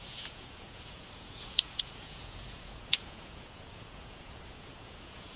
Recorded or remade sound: remade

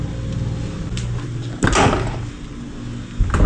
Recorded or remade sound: recorded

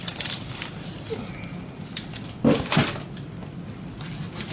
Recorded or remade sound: recorded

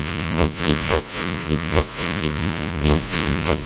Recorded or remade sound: remade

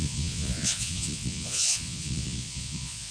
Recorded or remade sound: remade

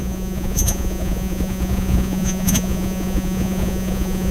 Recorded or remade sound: remade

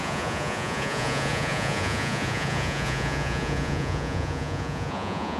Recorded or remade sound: remade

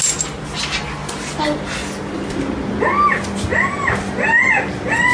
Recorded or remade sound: recorded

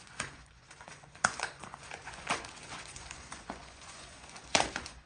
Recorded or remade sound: remade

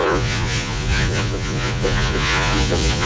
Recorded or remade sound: remade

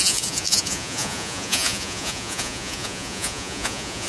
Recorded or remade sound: remade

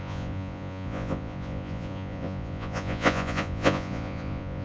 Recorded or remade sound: remade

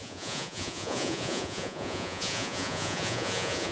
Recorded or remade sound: remade